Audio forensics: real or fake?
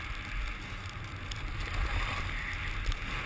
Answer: real